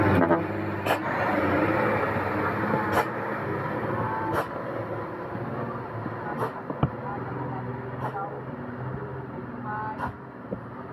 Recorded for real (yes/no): yes